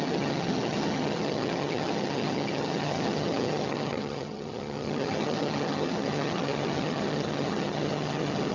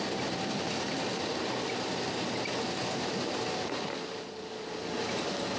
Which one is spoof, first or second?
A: first